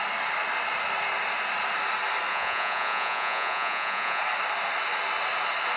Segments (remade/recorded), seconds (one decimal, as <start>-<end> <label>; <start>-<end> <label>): 0.0-2.3 recorded; 2.3-4.2 remade; 4.2-5.8 recorded